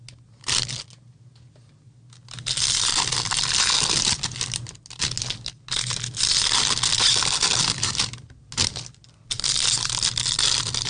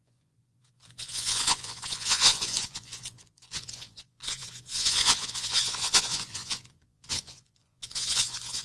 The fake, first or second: second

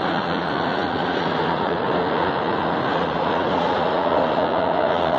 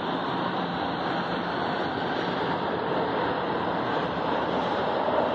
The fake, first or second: first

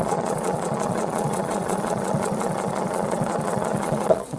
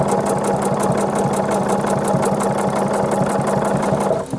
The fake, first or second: first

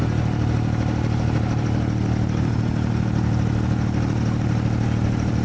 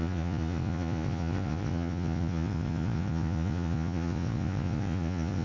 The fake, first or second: second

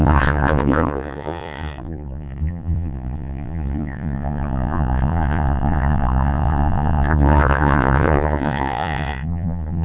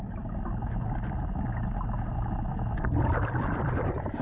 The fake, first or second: first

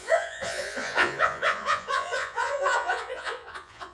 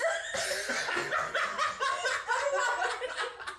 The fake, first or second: first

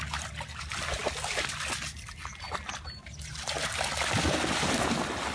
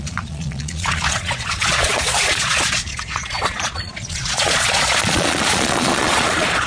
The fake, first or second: second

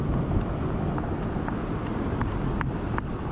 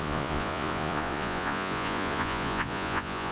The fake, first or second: second